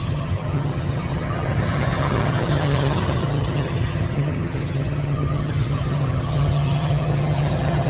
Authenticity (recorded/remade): remade